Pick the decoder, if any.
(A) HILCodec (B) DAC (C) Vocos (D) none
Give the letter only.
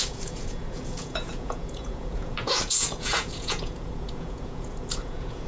C